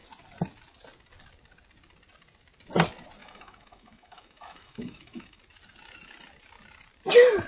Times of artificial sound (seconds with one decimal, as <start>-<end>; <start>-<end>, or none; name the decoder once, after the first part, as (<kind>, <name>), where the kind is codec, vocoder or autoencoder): 3.2-5.4 (autoencoder, DAC-VAE)

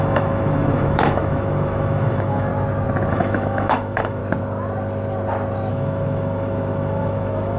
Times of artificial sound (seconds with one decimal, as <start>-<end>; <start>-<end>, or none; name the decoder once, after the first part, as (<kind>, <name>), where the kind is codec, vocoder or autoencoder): 0.0-2.5 (autoencoder, DAC-VAE); 3.1-4.2; 5.7-7.6

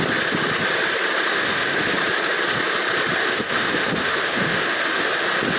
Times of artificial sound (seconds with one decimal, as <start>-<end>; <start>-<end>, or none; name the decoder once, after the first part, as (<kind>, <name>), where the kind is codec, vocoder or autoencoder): 1.3-1.9 (autoencoder, DAC-VAE); 3.2-5.1

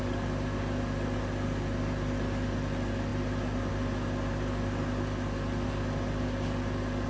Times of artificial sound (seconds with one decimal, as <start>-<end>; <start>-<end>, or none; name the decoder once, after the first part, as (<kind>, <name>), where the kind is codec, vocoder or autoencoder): none

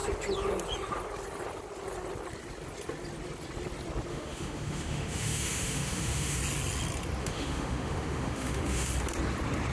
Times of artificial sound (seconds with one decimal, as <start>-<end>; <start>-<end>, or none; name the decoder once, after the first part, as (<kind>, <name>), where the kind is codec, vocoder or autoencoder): 4.1-6.4 (autoencoder, DAC-VAE); 7.2-8.9

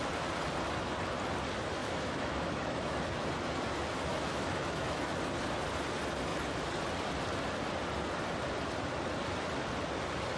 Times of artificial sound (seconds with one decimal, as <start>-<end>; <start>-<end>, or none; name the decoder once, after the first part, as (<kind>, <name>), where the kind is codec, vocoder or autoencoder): 1.8-3.3 (autoencoder, DAC-VAE); 4.1-5.2

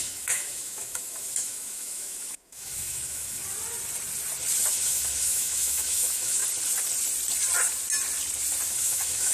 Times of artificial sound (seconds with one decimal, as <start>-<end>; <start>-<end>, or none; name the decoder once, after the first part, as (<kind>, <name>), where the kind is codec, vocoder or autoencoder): 0.0-3.4 (autoencoder, DAC-VAE); 4.7-6.4; 8.7-9.3